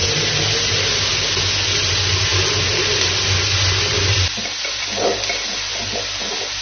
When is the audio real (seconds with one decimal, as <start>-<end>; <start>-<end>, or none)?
0.0-6.6